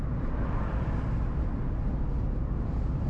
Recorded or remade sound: recorded